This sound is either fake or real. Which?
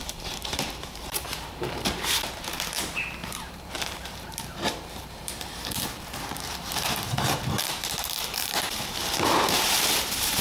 fake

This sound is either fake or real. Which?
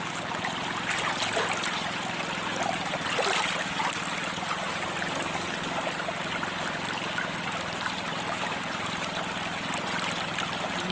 real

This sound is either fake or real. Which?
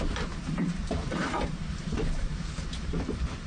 fake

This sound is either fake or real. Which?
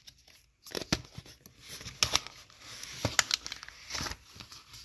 real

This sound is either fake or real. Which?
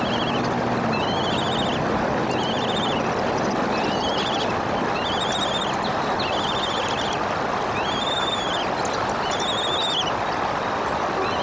real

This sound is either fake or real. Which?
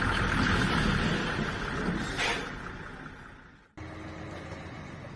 real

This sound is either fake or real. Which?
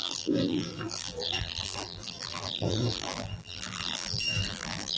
fake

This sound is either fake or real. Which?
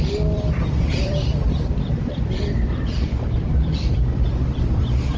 fake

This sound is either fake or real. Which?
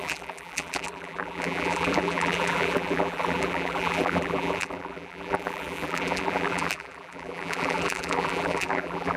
fake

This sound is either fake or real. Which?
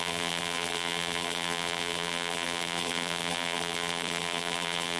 fake